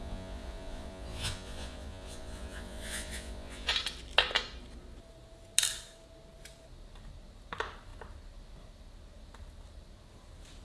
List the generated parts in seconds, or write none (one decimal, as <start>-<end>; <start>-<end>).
0.0-3.7